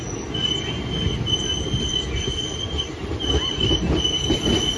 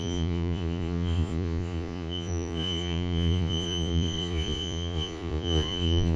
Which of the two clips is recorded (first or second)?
first